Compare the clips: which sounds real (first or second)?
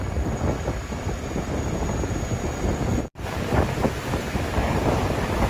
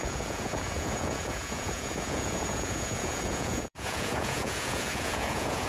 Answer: first